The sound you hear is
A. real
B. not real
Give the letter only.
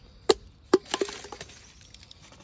A